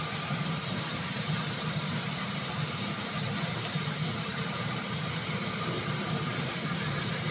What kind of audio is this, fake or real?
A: fake